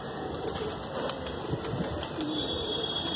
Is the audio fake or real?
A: real